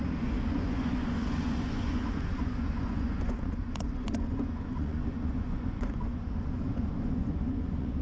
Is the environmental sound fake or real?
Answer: fake